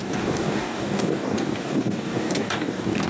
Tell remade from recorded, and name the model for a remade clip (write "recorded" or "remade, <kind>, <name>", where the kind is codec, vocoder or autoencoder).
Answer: remade, codec, DAC